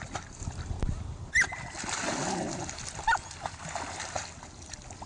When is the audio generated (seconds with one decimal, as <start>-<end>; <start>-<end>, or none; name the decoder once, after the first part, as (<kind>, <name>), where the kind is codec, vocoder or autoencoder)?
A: 0.4-1.3 (vocoder, BigVGAN v2)